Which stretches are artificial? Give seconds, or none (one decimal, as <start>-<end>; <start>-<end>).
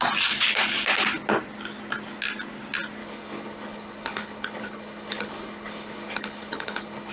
3.0-7.1